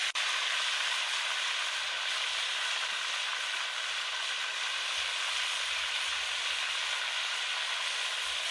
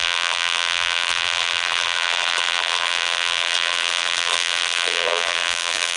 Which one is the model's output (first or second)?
second